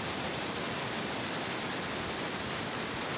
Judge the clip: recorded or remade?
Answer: recorded